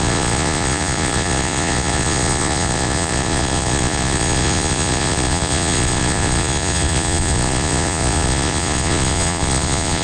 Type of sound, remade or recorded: remade